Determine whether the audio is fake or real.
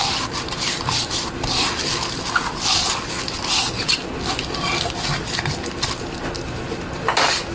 real